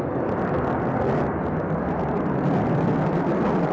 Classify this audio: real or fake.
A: real